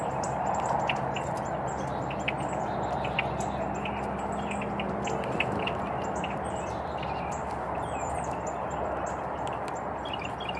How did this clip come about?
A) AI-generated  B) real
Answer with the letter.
B